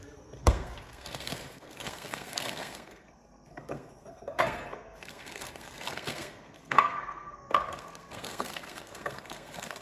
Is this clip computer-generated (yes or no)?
yes